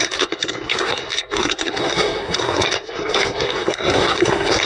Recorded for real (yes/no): no